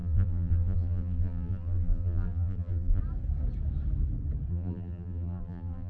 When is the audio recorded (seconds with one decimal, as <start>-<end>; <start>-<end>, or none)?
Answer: 3.0-4.5